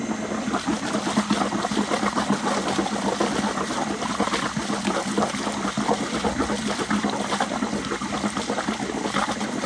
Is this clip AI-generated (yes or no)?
no